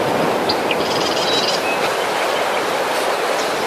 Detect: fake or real real